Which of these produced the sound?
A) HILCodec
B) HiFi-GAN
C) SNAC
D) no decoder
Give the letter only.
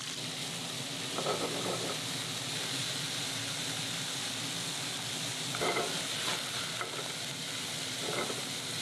D